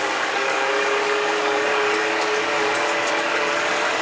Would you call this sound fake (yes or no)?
yes